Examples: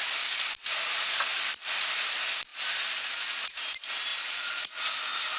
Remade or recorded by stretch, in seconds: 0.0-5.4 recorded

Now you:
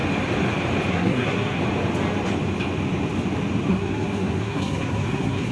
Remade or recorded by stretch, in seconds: 0.0-0.9 recorded; 0.9-1.6 remade; 1.6-3.7 recorded; 3.7-5.5 remade

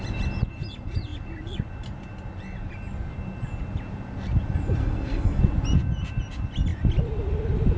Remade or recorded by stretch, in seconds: 0.0-4.8 recorded; 4.8-5.4 remade; 5.4-7.8 recorded

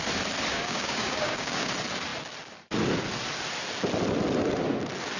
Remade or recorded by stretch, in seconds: 0.0-0.5 recorded; 0.5-1.7 remade; 1.7-5.2 recorded